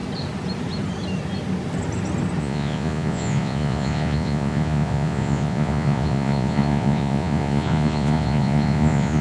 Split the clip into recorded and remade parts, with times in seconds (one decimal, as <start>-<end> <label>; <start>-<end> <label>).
0.0-2.4 recorded; 2.4-9.2 remade